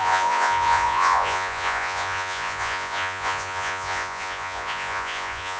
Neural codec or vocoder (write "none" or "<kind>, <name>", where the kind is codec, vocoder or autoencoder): vocoder, Vocos